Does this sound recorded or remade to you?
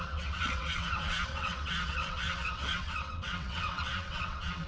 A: remade